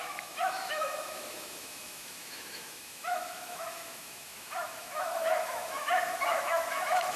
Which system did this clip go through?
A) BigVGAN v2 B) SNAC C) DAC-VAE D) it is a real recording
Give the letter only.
C